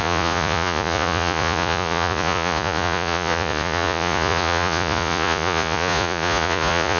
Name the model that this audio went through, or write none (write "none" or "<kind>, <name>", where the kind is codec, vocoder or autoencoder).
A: vocoder, Vocos